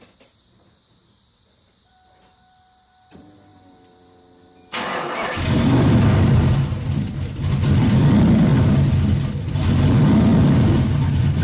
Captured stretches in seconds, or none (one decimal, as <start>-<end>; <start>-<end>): 8.5-9.3; 10.3-11.4